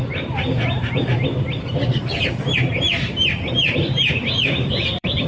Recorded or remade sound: remade